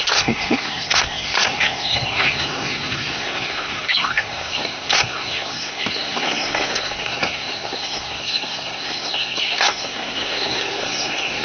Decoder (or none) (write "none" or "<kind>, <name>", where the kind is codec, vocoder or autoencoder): codec, SNAC